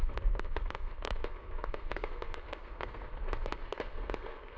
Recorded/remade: remade